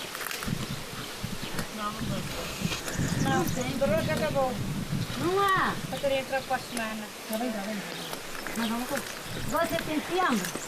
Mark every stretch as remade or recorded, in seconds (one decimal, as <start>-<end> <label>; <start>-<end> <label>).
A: 0.0-2.3 recorded; 2.3-2.8 remade; 2.8-10.7 recorded